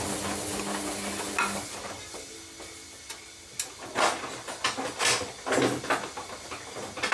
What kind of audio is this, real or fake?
real